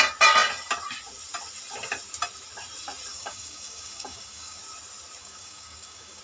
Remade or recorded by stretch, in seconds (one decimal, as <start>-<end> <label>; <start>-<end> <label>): 0.0-3.1 recorded; 3.1-4.6 remade; 4.6-5.2 recorded; 5.2-6.2 remade